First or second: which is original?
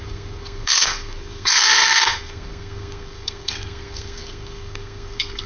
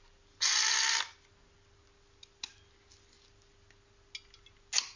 second